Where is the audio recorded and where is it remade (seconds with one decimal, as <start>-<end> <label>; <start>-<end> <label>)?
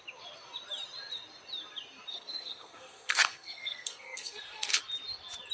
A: 0.0-2.1 recorded; 2.1-4.8 remade; 4.8-5.5 recorded